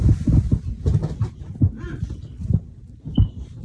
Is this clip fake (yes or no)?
no